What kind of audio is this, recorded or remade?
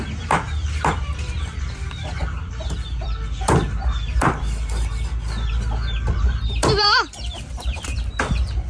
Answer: remade